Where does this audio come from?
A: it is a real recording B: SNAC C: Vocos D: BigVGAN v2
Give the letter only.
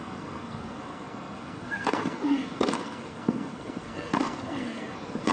B